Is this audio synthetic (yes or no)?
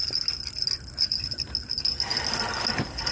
no